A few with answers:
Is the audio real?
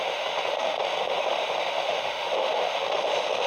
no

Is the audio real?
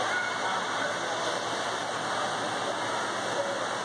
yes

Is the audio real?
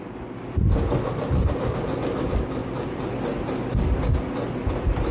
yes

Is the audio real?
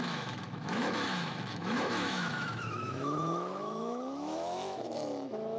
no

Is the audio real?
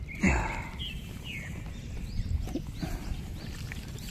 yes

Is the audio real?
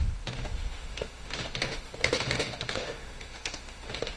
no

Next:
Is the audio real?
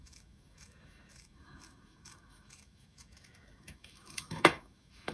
no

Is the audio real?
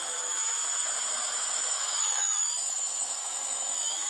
no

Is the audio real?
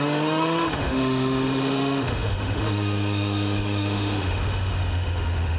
no